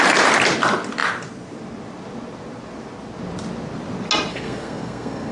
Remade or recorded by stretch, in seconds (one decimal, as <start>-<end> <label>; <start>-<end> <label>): 0.0-4.3 recorded; 4.3-5.3 remade